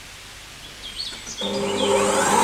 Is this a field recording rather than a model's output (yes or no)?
yes